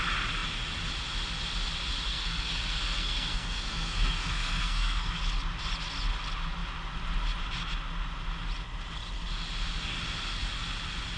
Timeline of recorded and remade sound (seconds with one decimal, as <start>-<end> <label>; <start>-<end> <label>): 0.0-2.1 recorded; 2.1-5.2 remade; 5.2-11.2 recorded

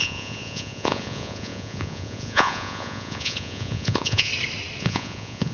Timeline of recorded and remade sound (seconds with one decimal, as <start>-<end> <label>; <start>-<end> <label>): 0.0-4.3 remade; 4.3-4.8 recorded; 4.8-5.5 remade